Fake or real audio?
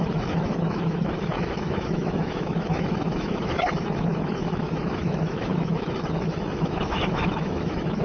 fake